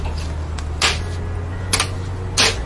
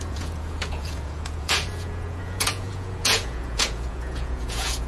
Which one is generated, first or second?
second